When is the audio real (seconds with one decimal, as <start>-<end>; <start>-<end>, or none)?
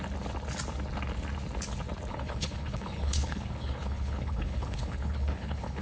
0.0-2.1